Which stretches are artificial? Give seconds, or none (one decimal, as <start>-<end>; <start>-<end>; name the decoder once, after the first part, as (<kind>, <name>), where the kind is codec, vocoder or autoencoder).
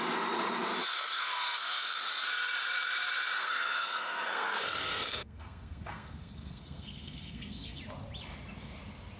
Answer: 0.8-2.0 (codec, SNAC); 3.4-7.8